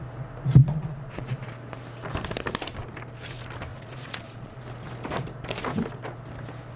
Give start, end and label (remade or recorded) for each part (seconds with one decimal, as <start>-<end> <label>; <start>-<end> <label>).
0.0-0.7 recorded; 0.7-1.5 remade; 1.5-3.7 recorded; 3.7-4.6 remade; 4.6-6.8 recorded